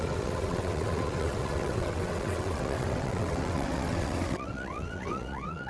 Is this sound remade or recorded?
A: remade